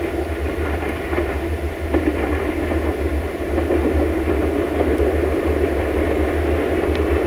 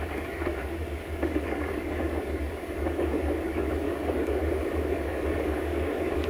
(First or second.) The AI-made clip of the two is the second